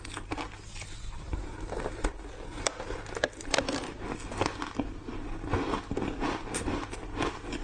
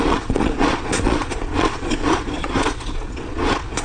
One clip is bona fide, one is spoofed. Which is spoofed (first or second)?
second